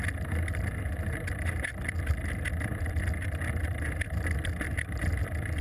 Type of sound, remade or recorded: recorded